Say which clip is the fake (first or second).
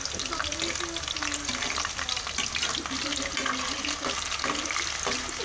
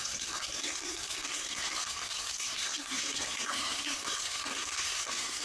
second